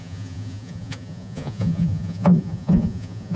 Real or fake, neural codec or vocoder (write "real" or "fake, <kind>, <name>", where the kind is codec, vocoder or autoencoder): fake, vocoder, Vocos